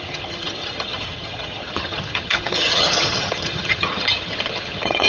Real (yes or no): no